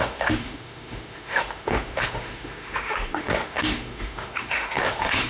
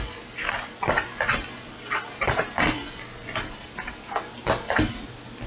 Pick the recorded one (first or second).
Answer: second